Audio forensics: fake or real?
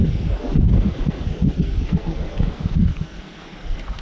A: fake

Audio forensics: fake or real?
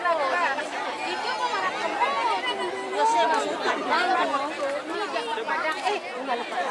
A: real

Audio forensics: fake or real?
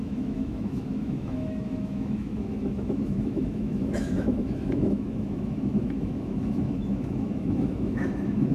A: fake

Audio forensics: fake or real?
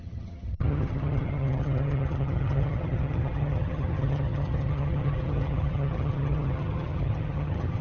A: fake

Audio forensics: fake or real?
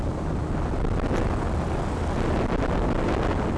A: real